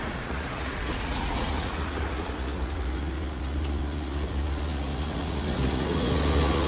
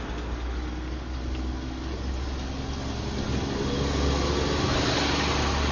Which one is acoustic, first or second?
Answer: second